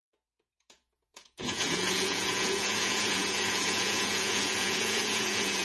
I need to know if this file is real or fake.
fake